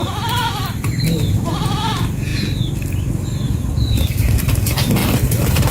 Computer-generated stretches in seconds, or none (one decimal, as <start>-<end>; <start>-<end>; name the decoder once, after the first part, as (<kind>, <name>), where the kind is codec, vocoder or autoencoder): 0.0-2.3 (vocoder, BigVGAN v2); 3.5-5.0